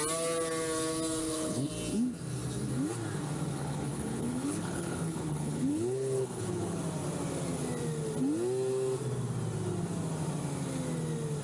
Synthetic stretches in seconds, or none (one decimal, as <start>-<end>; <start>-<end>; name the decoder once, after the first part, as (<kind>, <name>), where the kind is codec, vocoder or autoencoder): 1.2-1.7 (codec, HILCodec); 3.5-6.8